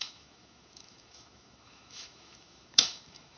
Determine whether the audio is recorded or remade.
remade